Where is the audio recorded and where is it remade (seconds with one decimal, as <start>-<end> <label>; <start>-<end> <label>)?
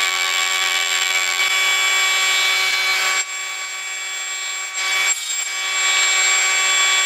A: 0.0-1.4 remade; 1.4-7.1 recorded